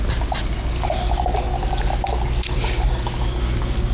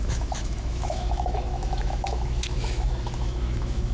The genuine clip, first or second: first